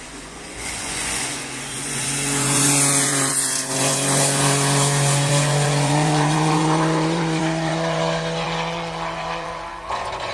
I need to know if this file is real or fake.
fake